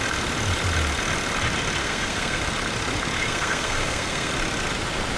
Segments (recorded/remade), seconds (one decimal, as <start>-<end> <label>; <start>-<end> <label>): 0.0-1.8 recorded; 1.8-2.4 remade; 2.4-3.3 recorded; 3.3-4.3 remade; 4.3-5.2 recorded